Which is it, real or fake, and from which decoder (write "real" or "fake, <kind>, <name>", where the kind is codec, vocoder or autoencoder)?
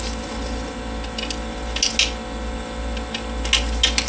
real